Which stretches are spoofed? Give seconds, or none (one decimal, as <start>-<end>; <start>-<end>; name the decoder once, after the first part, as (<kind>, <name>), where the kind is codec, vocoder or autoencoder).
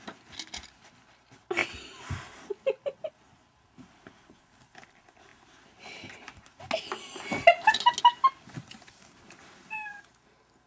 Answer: none